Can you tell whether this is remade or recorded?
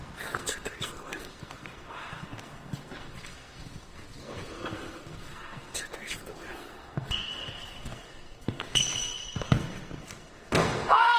remade